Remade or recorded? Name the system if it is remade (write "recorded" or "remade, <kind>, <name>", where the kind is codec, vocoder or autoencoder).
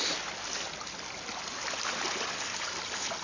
recorded